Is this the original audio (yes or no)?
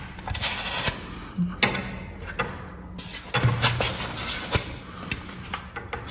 yes